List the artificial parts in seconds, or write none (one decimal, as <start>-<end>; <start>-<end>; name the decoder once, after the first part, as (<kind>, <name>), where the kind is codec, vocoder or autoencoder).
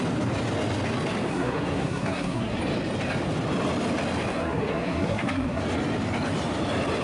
1.3-2.6 (codec, SNAC); 4.3-5.6